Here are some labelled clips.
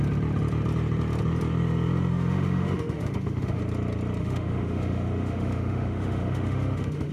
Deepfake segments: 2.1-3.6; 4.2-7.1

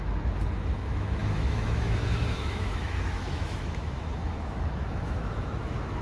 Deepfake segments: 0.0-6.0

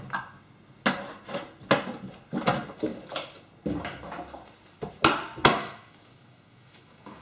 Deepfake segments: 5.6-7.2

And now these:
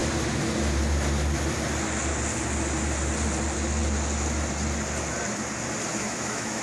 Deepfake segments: 5.9-6.6

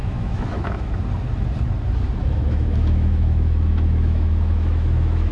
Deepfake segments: 0.0-0.9; 2.2-5.3

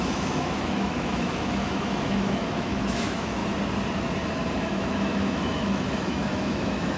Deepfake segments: 0.0-3.4; 4.6-7.0

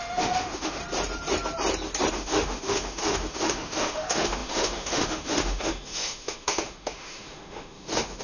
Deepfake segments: 0.0-0.8; 2.1-8.2

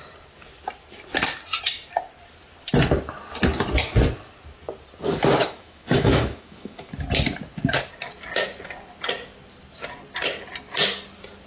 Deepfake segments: 5.4-6.9